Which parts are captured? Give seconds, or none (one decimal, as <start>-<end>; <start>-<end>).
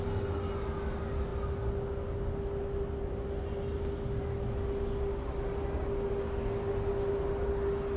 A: 0.0-8.0